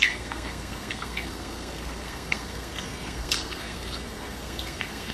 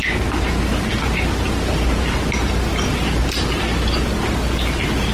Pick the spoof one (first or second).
first